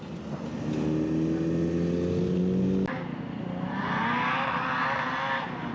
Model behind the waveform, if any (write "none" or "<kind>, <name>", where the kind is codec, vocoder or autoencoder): none